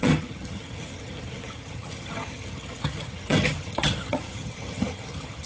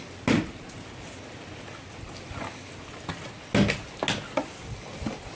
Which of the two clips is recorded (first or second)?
second